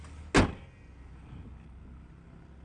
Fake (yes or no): no